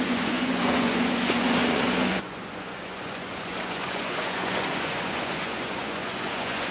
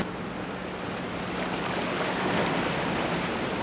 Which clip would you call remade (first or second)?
first